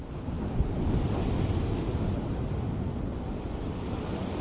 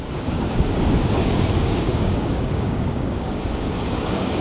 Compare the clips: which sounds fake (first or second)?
second